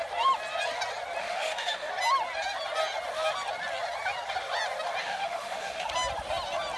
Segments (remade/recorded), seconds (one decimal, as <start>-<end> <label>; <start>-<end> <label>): 0.0-1.2 recorded; 1.2-1.9 remade; 1.9-5.0 recorded; 5.0-5.9 remade; 5.9-6.8 recorded